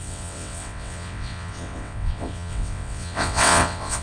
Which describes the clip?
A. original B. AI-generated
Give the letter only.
B